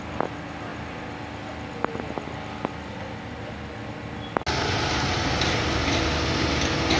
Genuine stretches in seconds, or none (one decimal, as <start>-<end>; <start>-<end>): 0.0-7.0